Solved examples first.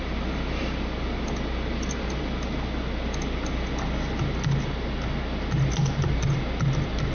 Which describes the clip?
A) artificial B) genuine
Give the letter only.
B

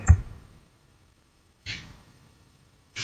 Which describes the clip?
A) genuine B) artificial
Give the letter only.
B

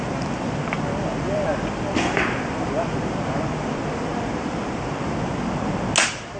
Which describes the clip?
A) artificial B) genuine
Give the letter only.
B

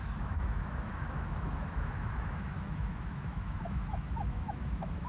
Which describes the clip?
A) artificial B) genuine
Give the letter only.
A